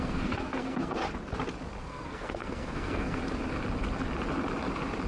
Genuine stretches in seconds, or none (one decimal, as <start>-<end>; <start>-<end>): 1.0-1.8; 3.2-5.1